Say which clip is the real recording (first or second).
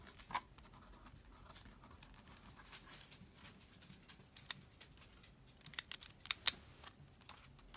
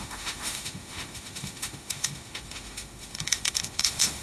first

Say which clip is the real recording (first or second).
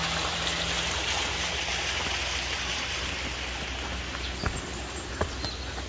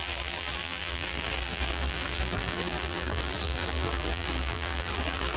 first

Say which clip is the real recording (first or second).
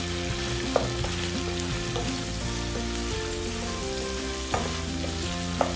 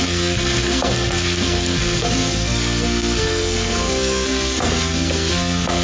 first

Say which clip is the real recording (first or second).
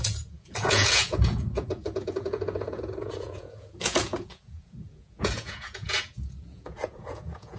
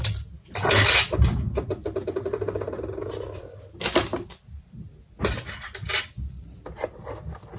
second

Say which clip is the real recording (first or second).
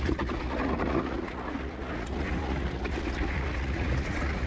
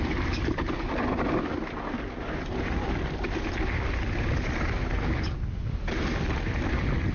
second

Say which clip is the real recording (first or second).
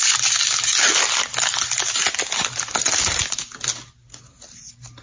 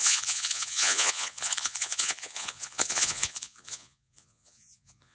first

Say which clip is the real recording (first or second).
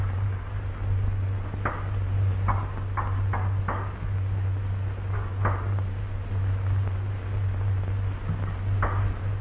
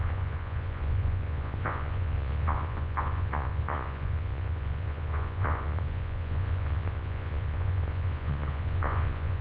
first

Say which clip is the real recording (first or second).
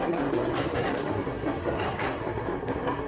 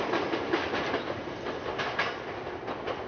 second